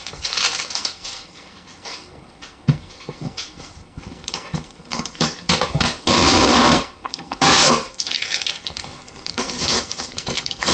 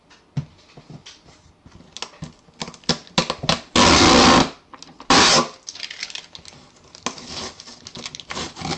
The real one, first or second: second